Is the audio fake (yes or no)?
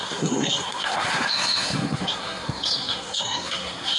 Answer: yes